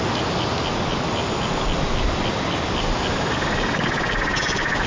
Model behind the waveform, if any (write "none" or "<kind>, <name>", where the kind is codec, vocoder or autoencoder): none